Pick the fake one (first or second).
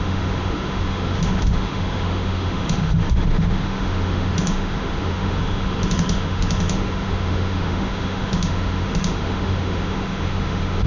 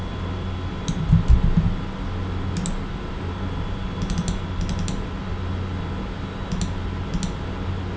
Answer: first